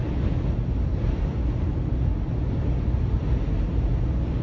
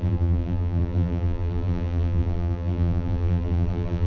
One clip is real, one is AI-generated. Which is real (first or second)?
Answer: first